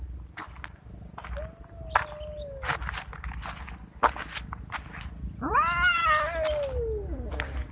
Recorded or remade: recorded